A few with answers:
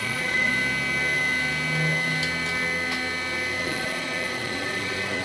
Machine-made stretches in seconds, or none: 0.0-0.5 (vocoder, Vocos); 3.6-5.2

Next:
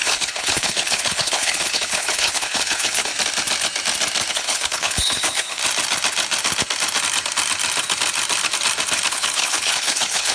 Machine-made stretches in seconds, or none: 0.0-3.1 (codec, HILCodec); 4.3-5.6; 9.1-10.3

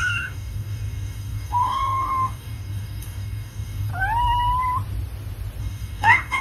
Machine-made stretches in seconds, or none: 0.0-3.9 (codec, DAC); 5.6-6.4

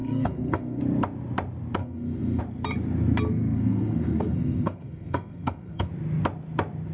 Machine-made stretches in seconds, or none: 0.0-0.8 (codec, SNAC); 1.8-2.4; 3.3-5.9

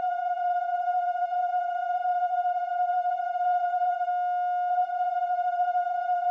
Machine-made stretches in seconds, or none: 0.0-4.1 (vocoder, Vocos); 4.7-6.3

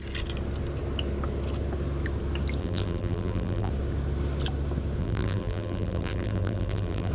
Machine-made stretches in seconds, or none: 2.6-3.7 (vocoder, BigVGAN v2); 5.0-7.1